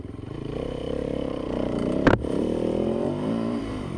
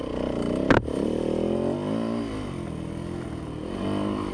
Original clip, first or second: second